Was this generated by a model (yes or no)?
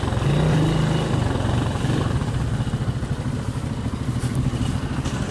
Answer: no